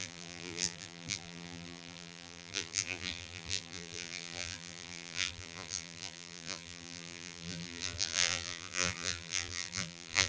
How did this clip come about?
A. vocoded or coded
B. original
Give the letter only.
A